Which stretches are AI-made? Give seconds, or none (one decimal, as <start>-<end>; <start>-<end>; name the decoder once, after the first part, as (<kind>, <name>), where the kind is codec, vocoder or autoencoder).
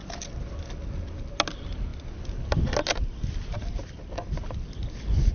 none